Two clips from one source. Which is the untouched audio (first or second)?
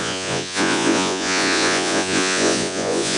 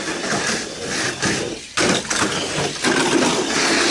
second